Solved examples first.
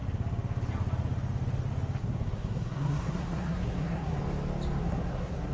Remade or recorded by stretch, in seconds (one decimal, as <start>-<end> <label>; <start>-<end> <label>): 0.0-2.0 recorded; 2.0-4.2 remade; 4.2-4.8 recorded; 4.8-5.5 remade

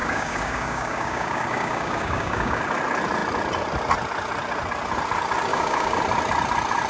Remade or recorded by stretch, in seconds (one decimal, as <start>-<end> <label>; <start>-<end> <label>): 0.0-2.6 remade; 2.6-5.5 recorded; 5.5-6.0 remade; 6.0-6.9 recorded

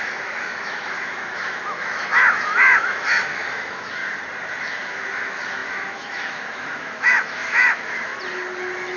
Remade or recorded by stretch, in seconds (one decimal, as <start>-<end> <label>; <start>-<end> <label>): 0.0-4.0 remade; 4.0-4.6 recorded; 4.6-8.1 remade; 8.1-9.0 recorded